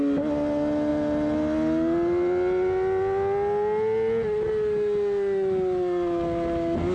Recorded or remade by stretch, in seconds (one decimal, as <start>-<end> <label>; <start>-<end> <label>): 0.0-6.9 recorded